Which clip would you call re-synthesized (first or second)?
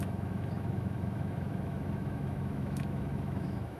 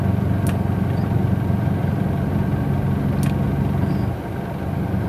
first